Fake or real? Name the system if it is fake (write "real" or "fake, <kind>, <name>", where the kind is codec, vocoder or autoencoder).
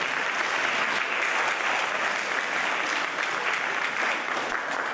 real